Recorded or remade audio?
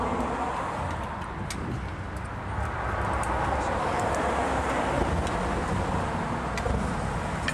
recorded